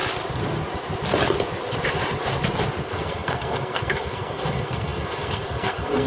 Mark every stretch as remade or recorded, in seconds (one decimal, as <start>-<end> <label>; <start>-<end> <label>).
0.0-2.8 recorded; 2.8-6.1 remade